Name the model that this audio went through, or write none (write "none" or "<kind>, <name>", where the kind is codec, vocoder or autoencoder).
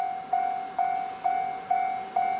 none